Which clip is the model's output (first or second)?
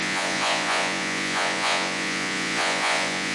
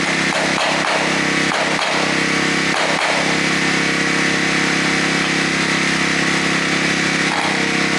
first